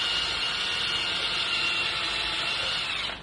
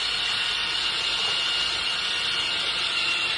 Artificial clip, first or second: second